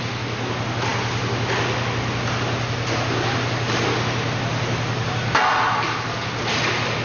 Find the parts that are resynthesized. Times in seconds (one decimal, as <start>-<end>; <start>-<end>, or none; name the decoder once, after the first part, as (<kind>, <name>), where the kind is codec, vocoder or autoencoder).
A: none